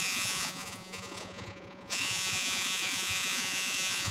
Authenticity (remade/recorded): remade